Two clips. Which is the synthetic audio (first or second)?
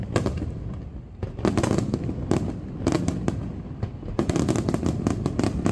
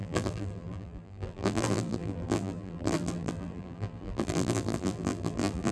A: second